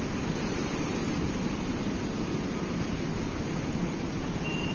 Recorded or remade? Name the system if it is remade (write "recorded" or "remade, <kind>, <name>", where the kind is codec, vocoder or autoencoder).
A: remade, vocoder, BigVGAN v2